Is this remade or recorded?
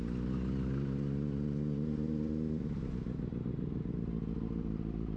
recorded